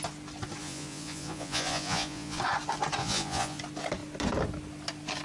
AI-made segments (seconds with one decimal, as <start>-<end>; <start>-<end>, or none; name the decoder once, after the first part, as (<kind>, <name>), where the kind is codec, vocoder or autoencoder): 0.6-2.4 (vocoder, Vocos); 3.0-3.6